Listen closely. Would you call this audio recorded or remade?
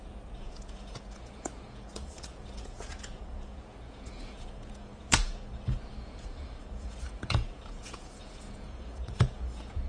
remade